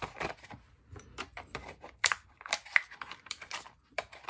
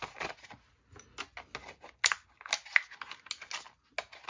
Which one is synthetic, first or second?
first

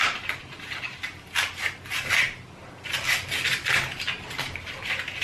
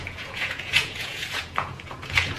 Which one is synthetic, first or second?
second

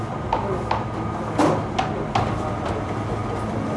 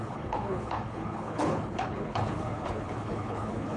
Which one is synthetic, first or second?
second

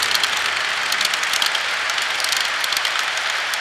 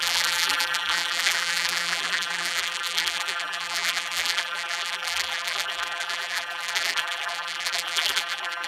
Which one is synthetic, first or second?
second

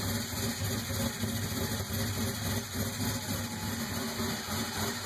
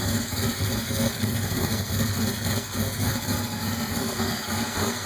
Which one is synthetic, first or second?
second